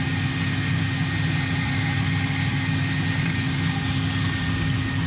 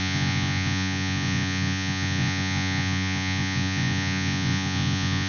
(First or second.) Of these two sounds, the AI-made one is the second